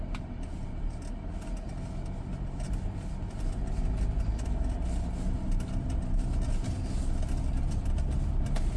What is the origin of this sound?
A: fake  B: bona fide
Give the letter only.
B